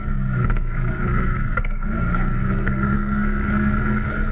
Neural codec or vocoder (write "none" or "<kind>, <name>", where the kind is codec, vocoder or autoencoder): codec, SNAC